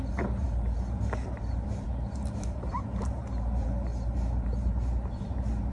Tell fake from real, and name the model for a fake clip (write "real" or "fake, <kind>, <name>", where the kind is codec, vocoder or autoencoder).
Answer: fake, vocoder, BigVGAN v2